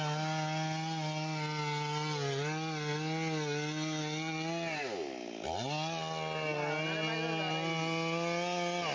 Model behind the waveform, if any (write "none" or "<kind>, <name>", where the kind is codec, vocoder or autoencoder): none